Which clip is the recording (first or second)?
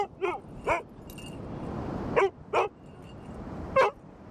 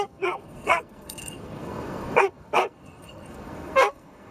first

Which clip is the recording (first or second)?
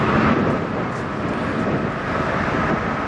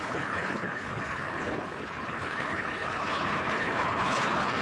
first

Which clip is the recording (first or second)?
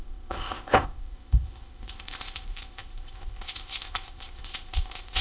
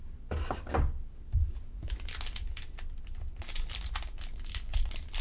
second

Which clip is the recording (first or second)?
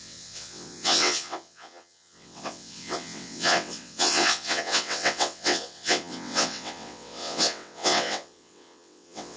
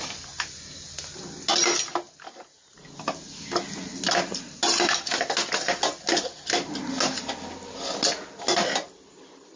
second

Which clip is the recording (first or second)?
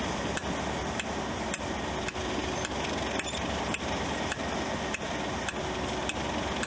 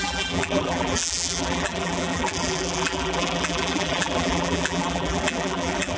first